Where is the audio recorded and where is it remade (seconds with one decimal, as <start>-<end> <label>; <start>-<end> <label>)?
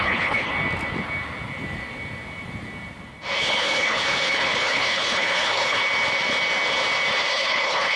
0.0-0.5 remade; 0.5-3.4 recorded; 3.4-5.8 remade; 5.8-7.3 recorded; 7.3-8.0 remade